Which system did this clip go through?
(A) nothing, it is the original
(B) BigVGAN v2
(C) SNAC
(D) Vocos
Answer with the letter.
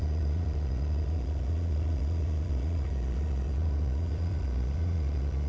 D